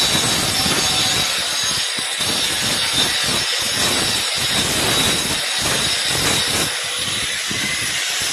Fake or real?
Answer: real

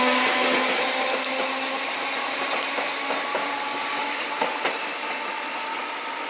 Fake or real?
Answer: real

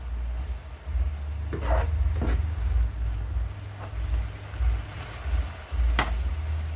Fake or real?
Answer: real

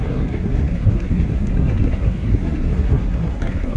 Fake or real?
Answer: fake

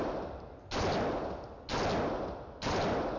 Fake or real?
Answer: real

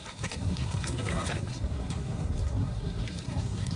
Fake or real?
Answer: fake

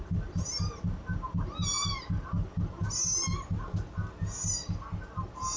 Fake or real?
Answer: real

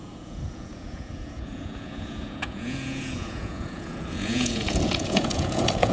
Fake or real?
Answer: fake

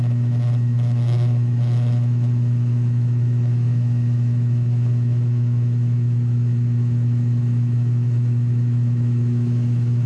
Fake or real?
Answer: fake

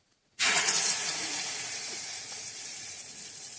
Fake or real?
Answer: fake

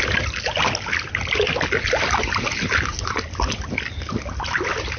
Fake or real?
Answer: real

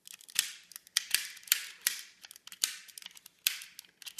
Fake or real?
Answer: real